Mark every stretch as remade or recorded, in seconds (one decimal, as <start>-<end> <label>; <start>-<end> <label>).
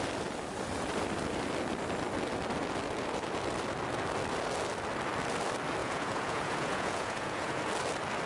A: 0.0-5.8 recorded; 5.8-7.6 remade; 7.6-8.3 recorded